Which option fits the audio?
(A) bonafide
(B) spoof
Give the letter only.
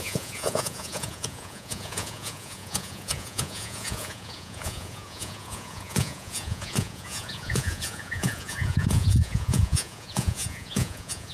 B